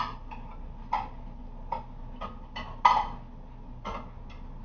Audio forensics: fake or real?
real